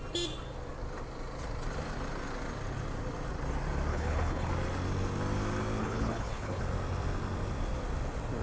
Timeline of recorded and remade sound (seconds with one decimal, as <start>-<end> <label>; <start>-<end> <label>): 0.0-3.9 recorded; 3.9-4.5 remade; 4.5-5.8 recorded; 5.8-6.6 remade; 6.6-8.4 recorded